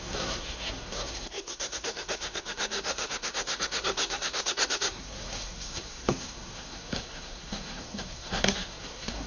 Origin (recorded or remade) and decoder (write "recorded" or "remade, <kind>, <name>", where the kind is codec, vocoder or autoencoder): remade, codec, SNAC